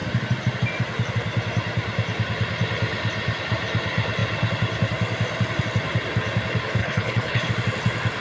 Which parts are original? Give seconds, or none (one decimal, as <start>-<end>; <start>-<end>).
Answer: 0.0-6.8; 7.5-8.2